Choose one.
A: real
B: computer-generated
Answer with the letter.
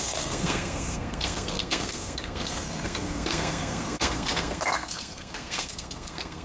B